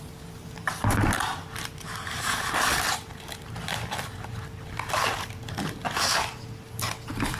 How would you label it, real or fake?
fake